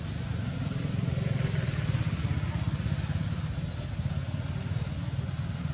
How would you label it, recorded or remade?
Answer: recorded